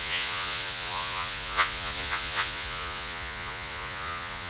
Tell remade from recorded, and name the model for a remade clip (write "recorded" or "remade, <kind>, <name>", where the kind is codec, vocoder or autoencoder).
remade, vocoder, Vocos